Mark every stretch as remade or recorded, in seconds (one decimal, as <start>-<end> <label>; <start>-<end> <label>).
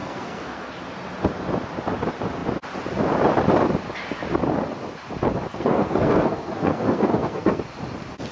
0.0-0.7 remade; 0.7-5.5 recorded; 5.5-7.6 remade; 7.6-8.3 recorded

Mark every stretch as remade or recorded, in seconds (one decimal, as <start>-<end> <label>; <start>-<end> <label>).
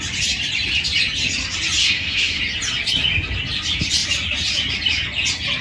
0.0-1.8 recorded; 1.8-2.4 remade; 2.4-5.6 recorded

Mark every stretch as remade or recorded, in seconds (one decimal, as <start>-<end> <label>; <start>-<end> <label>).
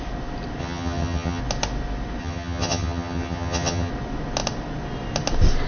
0.0-0.6 recorded; 0.6-1.4 remade; 1.4-2.2 recorded; 2.2-3.9 remade; 3.9-5.7 recorded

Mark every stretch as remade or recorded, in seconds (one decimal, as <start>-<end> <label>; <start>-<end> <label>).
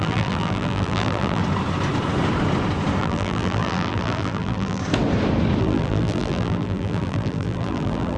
0.0-1.4 remade; 1.4-3.0 recorded; 3.0-4.8 remade; 4.8-5.6 recorded; 5.6-8.2 remade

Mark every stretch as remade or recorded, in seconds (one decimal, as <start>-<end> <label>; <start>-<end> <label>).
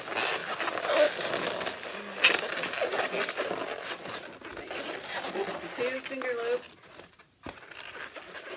0.0-8.6 recorded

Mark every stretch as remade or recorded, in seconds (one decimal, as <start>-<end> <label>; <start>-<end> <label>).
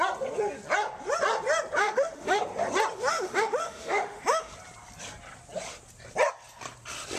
0.0-1.8 recorded; 1.8-2.4 remade; 2.4-3.1 recorded; 3.1-4.5 remade; 4.5-7.2 recorded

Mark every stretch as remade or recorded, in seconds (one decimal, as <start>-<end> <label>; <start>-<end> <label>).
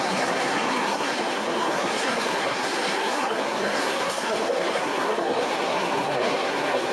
0.0-6.9 remade